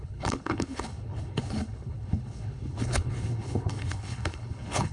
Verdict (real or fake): fake